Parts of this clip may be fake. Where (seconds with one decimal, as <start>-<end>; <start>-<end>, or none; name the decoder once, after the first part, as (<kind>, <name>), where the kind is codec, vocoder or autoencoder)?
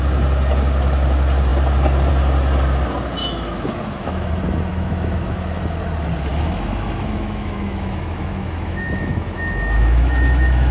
3.2-4.3 (autoencoder, DAC-VAE); 4.7-5.6; 6.3-10.7